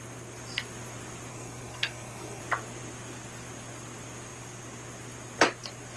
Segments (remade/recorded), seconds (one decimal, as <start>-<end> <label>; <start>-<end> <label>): 0.0-1.3 recorded; 1.3-2.4 remade; 2.4-6.0 recorded

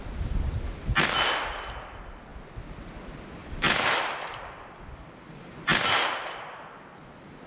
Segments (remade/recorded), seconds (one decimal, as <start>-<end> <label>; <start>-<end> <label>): 0.0-3.4 recorded; 3.4-6.1 remade; 6.1-7.5 recorded

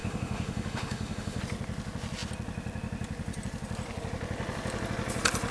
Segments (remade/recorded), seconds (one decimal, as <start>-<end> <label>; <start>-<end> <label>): 0.0-1.4 remade; 1.4-5.5 recorded

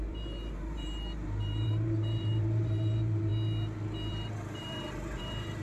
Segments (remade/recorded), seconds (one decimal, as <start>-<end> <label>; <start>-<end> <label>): 0.0-3.3 remade; 3.3-4.1 recorded; 4.1-5.6 remade

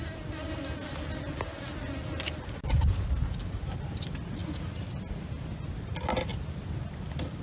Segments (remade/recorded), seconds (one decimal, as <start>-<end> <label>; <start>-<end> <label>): 0.0-7.4 recorded

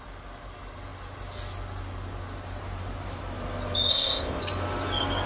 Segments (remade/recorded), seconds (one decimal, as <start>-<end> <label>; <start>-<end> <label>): 0.0-3.9 recorded; 3.9-4.4 remade; 4.4-5.3 recorded

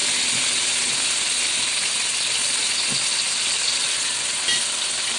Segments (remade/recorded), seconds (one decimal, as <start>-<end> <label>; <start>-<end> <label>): 0.0-5.2 recorded